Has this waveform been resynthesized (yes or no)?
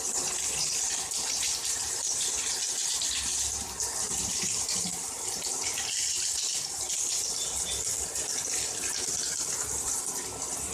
yes